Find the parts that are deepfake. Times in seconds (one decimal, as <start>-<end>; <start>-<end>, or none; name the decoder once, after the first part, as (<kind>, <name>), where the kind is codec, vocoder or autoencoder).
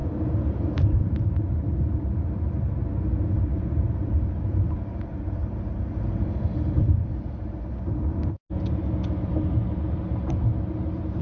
0.0-2.4 (vocoder, BigVGAN v2); 3.5-8.2